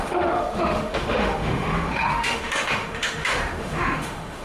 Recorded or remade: remade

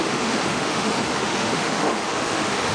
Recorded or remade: remade